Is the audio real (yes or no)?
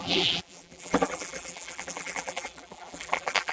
no